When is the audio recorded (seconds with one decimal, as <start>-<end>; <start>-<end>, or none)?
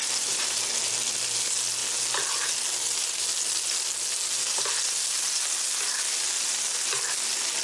0.6-7.6